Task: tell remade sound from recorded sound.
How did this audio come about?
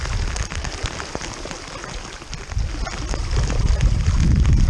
recorded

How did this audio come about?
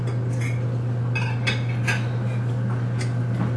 recorded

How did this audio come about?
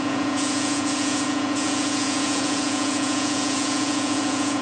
remade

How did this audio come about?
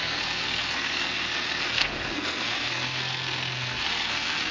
remade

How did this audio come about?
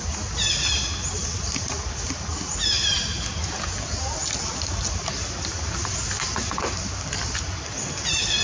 recorded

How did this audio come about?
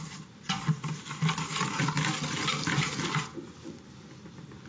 recorded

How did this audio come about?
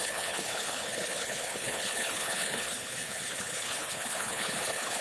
remade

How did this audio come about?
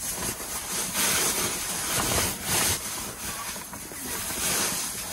remade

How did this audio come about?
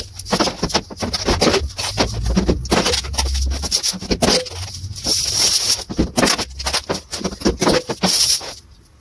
recorded